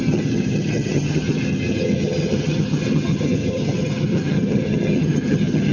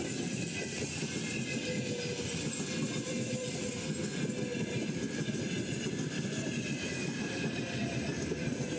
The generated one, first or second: first